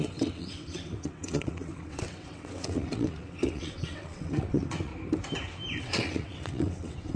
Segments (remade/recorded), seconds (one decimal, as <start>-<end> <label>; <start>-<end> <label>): 0.0-4.9 remade; 4.9-5.8 recorded; 5.8-7.2 remade